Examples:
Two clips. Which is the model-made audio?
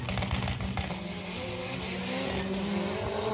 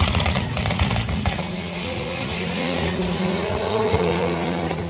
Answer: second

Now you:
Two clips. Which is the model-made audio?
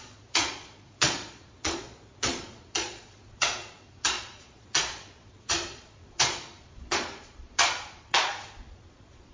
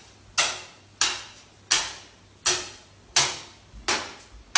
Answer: first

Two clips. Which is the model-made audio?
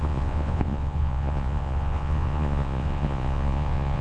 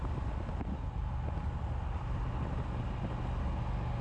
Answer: first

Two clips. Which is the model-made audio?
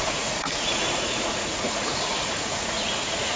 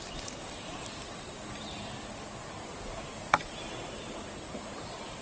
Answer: first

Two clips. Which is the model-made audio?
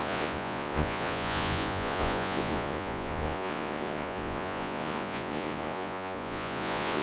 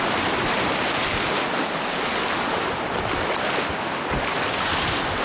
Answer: first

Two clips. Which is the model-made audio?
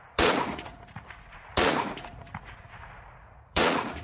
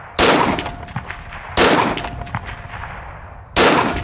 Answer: first